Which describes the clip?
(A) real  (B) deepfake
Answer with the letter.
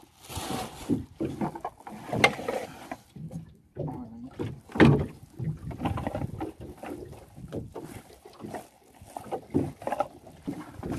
A